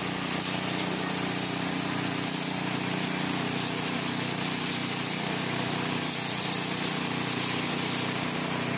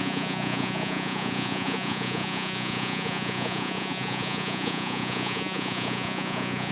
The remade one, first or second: second